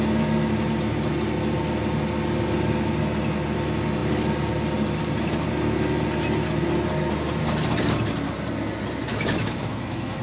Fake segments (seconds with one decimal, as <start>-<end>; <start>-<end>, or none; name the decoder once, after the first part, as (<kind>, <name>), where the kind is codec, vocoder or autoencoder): 9.1-10.2 (autoencoder, DAC-VAE)

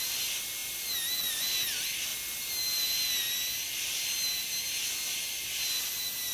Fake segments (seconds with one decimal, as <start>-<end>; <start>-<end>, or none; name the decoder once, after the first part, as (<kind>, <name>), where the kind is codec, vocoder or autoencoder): none

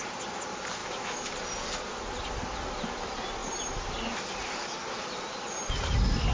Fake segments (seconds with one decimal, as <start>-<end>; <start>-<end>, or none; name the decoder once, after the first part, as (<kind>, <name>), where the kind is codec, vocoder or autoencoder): 0.8-1.3 (autoencoder, DAC-VAE)

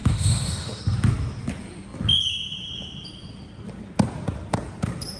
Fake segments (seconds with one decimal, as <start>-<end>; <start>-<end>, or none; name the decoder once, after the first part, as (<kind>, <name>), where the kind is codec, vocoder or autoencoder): 0.0-0.8 (autoencoder, DAC-VAE)

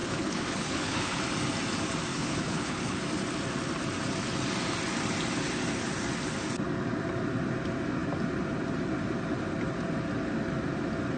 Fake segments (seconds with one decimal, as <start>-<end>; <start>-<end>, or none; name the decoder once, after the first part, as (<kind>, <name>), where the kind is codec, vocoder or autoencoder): 0.0-1.2 (codec, HILCodec); 2.1-3.0

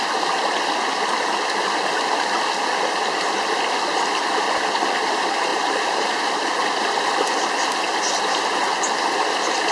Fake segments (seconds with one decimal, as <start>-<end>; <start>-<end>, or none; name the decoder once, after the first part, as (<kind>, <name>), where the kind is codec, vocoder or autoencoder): 5.5-6.1 (vocoder, BigVGAN v2)

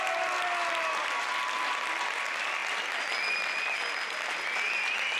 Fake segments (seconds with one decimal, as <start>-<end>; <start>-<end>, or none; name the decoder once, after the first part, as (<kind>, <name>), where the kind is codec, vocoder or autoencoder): none